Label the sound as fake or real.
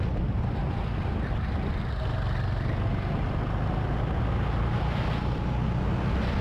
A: real